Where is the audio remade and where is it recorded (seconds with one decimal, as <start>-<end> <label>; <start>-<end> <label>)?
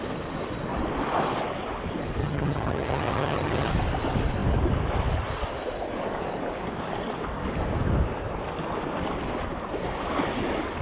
0.0-2.2 recorded; 2.2-3.7 remade; 3.7-10.8 recorded